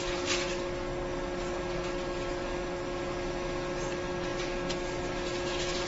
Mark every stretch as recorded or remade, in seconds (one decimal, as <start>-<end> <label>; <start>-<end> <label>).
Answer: 0.0-5.9 recorded